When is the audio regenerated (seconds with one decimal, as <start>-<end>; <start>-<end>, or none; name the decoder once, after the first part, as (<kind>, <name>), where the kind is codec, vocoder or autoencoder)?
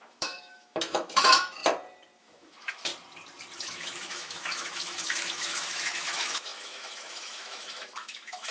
0.0-1.6 (autoencoder, DAC-VAE); 2.2-2.9; 3.6-8.5